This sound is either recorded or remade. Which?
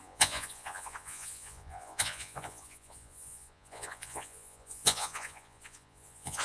remade